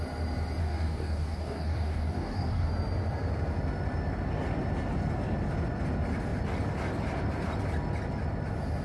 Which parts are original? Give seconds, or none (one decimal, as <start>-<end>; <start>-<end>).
0.0-0.6; 2.7-8.8